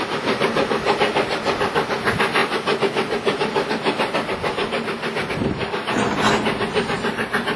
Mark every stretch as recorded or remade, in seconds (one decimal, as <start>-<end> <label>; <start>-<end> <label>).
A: 0.0-7.6 recorded